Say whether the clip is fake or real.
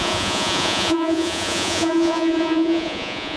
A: fake